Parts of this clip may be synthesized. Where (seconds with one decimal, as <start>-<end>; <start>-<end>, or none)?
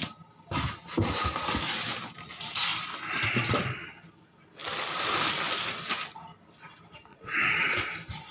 7.1-7.8